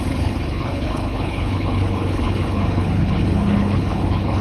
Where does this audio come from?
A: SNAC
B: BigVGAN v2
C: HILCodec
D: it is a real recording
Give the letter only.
C